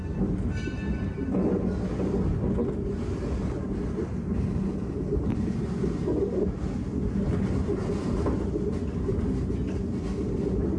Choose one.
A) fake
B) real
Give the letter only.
B